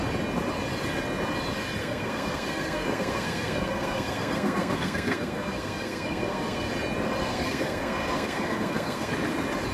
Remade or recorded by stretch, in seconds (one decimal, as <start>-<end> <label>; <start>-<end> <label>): 0.0-1.8 recorded; 1.8-6.7 remade; 6.7-7.2 recorded; 7.2-9.1 remade; 9.1-9.7 recorded